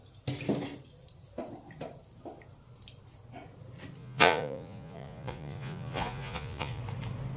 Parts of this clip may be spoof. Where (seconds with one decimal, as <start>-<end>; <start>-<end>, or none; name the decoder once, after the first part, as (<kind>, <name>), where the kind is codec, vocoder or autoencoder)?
4.0-6.8 (vocoder, Vocos)